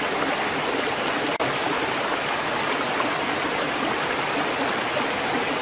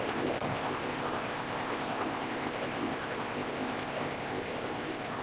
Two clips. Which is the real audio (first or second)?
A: first